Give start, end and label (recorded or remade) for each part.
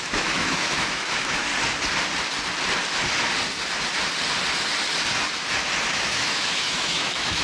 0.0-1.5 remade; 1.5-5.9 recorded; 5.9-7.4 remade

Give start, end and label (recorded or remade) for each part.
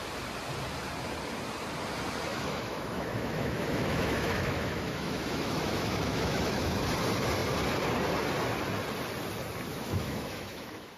0.0-2.3 recorded; 2.3-6.8 remade; 6.8-9.7 recorded; 9.7-11.0 remade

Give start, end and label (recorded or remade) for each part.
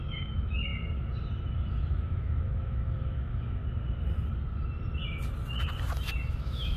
0.0-0.7 remade; 0.7-1.9 recorded; 1.9-3.6 remade; 3.6-6.3 recorded; 6.3-6.8 remade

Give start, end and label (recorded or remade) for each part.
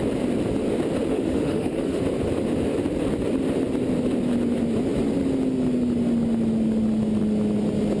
0.0-1.1 recorded; 1.1-2.0 remade; 2.0-8.0 recorded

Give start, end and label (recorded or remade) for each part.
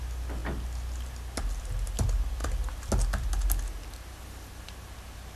0.0-5.4 recorded